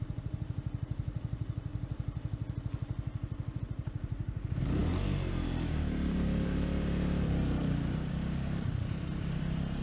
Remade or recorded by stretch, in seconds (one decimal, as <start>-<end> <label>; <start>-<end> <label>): 0.0-1.7 remade; 1.7-3.6 recorded; 3.6-4.8 remade; 4.8-5.3 recorded; 5.3-9.8 remade